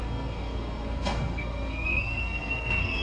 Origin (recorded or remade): remade